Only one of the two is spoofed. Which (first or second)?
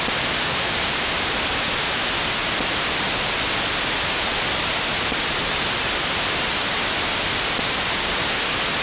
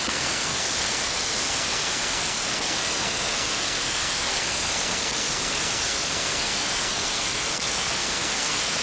second